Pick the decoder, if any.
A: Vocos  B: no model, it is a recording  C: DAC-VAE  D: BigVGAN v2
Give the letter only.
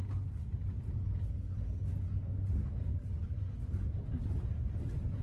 B